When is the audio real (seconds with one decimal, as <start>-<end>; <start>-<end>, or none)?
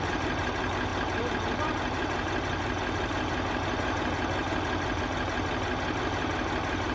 0.0-6.9